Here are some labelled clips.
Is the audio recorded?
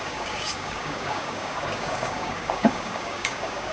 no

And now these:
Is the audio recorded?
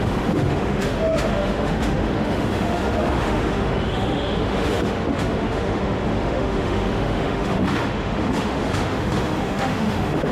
no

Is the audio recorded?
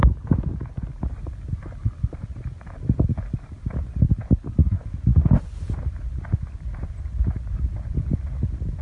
yes